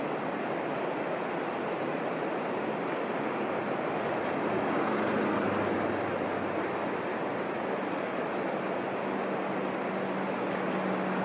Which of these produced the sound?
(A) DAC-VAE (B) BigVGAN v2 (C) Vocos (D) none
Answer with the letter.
D